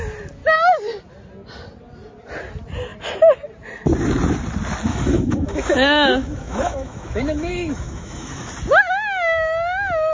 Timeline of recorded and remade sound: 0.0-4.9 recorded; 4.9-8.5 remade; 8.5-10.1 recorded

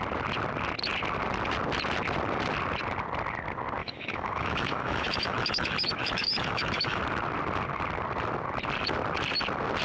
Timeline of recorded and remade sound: 0.0-3.8 recorded; 3.8-7.0 remade; 7.0-9.8 recorded

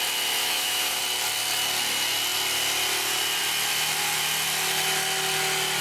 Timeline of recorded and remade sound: 0.0-0.4 recorded; 0.4-1.0 remade; 1.0-5.8 recorded

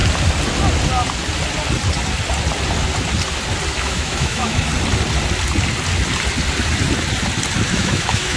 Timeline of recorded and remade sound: 0.0-3.7 recorded; 3.7-4.7 remade; 4.7-7.7 recorded; 7.7-8.4 remade